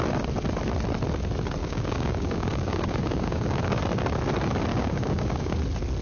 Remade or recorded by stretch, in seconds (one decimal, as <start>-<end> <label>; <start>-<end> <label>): 0.0-1.6 recorded; 1.6-3.8 remade; 3.8-4.7 recorded; 4.7-5.6 remade; 5.6-6.0 recorded